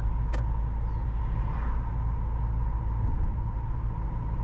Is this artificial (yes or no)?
no